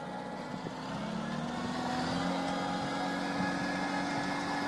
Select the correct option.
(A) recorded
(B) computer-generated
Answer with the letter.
A